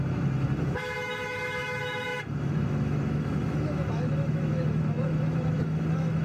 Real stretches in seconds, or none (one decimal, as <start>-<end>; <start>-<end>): none